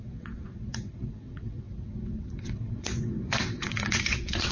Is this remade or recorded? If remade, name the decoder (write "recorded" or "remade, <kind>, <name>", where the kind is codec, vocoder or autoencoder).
remade, vocoder, WaveNeXt